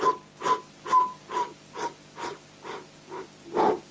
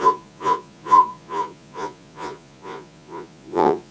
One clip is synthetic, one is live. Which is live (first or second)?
first